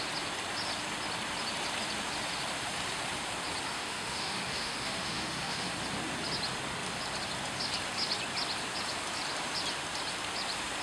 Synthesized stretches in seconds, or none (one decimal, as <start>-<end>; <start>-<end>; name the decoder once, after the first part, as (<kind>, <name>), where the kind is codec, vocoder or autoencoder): 3.7-5.7 (autoencoder, DAC-VAE)